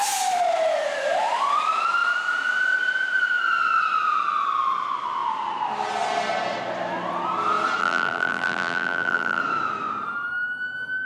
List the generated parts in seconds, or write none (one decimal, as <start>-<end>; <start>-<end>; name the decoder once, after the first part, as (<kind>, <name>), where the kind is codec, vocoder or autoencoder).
7.8-9.4 (vocoder, BigVGAN v2)